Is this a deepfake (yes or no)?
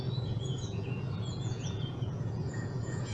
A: yes